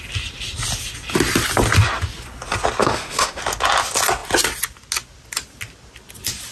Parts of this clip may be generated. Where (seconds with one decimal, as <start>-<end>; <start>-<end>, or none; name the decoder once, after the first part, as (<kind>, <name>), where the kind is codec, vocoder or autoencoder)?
2.8-3.4 (autoencoder, DAC-VAE)